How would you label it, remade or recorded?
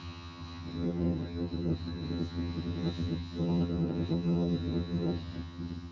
remade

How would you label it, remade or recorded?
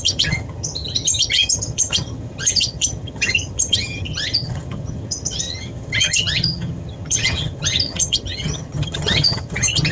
remade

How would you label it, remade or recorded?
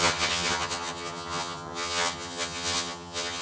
remade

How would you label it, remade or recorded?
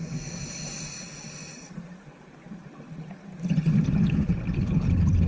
recorded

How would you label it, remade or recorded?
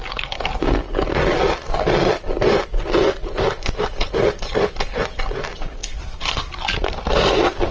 recorded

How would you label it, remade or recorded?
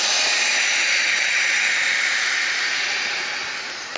recorded